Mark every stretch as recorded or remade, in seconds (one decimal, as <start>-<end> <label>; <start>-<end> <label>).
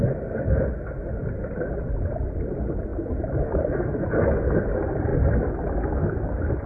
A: 0.0-6.7 recorded